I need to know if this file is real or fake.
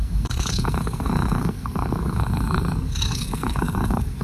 fake